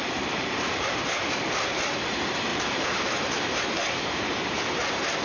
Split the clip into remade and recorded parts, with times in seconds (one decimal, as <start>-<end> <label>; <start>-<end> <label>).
0.0-1.1 remade; 1.1-2.5 recorded; 2.5-5.2 remade